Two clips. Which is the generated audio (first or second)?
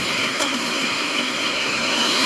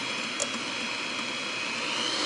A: first